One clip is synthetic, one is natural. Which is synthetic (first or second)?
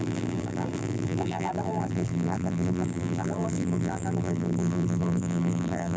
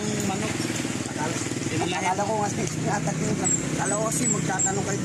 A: first